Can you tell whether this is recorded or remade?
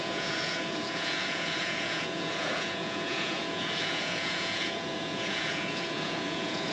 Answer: remade